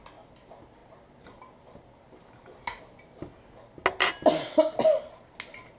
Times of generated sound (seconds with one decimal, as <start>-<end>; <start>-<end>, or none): none

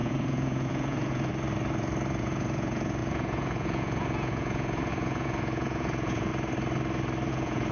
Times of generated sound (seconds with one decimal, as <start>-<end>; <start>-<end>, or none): 0.0-1.3; 2.2-6.3; 7.3-7.7

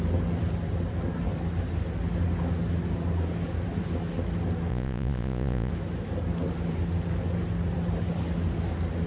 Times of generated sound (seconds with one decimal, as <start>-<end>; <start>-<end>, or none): 4.7-5.7